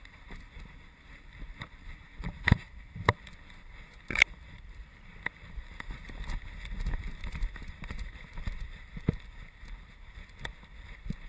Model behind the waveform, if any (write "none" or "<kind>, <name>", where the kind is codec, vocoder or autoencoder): vocoder, BigVGAN v2